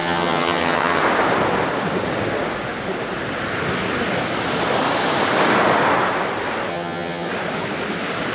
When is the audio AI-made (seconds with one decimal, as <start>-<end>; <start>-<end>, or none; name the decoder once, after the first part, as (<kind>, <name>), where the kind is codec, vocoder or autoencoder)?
0.0-1.0 (vocoder, HiFi-GAN); 6.7-7.3